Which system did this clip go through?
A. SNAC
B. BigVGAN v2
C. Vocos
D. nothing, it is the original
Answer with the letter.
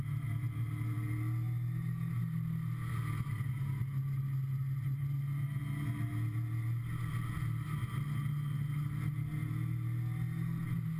D